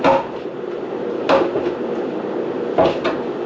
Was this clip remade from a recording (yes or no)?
no